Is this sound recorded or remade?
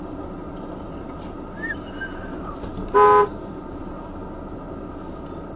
recorded